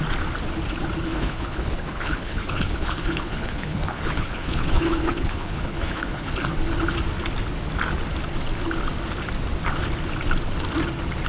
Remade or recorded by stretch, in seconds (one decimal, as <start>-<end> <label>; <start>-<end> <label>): 0.0-1.0 recorded; 1.0-6.3 remade; 6.3-11.3 recorded